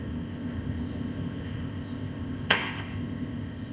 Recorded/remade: remade